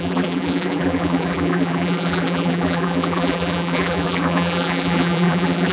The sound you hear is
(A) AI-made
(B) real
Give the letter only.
A